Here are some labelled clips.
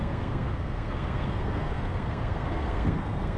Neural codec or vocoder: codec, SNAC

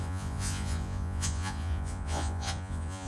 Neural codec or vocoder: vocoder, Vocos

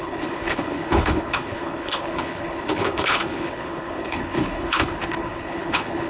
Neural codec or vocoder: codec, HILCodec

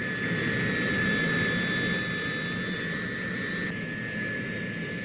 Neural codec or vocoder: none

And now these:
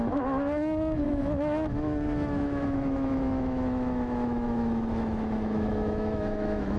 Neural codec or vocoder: autoencoder, DAC-VAE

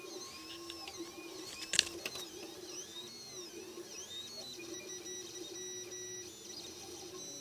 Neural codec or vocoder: none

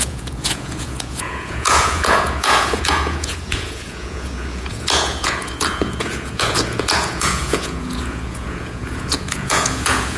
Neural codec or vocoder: vocoder, Vocos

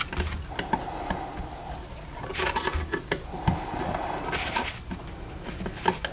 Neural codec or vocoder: none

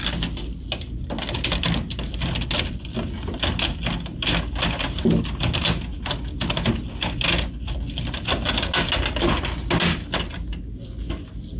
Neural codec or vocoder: none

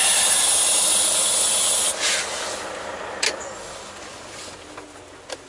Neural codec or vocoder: none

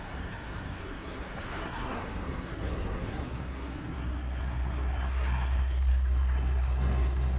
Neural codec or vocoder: codec, SNAC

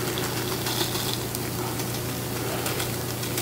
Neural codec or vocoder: none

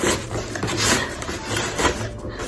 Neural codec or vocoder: none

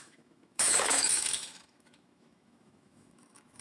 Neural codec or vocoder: autoencoder, DAC-VAE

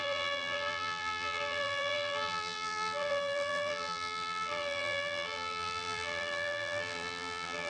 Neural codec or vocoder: vocoder, BigVGAN v2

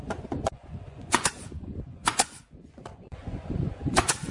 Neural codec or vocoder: vocoder, Vocos